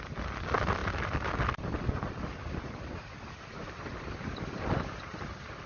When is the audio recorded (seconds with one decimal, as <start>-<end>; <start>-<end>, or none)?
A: 0.0-5.7